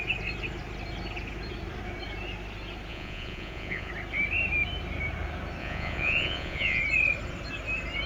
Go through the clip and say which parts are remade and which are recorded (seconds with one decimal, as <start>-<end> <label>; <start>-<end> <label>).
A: 0.0-2.9 recorded; 2.9-3.9 remade; 3.9-5.6 recorded; 5.6-6.8 remade; 6.8-8.1 recorded